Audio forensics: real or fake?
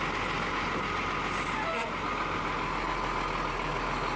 real